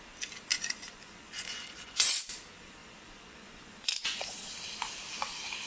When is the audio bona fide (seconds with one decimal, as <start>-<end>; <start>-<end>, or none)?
0.0-0.5; 2.2-2.8; 4.4-5.7